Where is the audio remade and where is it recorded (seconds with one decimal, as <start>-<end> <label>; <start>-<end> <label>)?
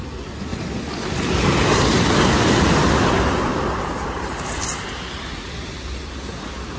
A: 0.0-3.5 recorded; 3.5-4.3 remade; 4.3-6.8 recorded